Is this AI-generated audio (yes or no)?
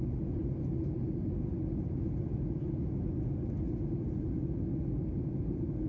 no